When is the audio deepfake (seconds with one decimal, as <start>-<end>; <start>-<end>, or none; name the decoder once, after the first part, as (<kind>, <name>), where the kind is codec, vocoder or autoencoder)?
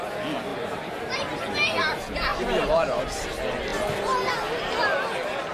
0.5-1.0 (vocoder, BigVGAN v2); 2.3-3.1